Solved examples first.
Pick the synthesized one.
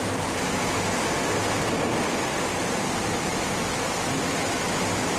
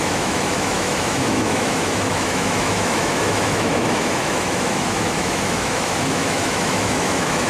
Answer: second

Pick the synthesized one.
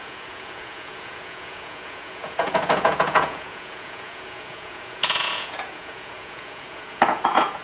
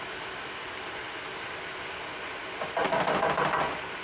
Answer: first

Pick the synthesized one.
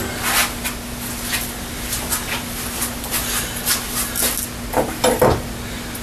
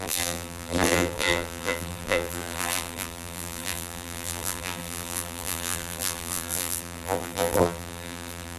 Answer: second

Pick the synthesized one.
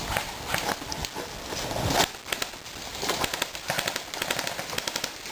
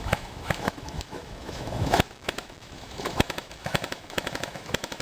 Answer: second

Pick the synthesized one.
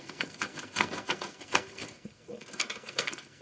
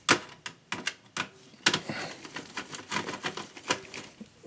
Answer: first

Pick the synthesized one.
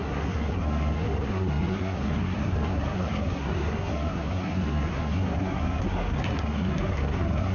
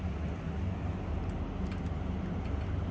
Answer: first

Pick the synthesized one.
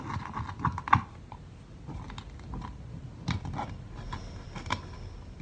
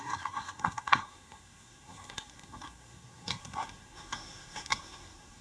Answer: second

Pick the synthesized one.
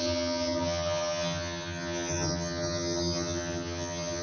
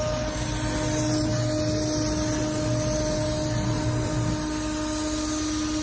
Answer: first